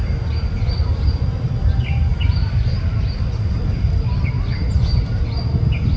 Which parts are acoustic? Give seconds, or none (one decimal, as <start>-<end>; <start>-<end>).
0.0-2.1; 2.8-6.0